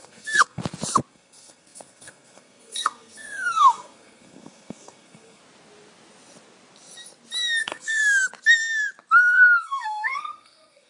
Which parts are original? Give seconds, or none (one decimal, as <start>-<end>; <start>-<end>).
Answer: 0.6-1.1; 5.4-7.6; 8.0-9.2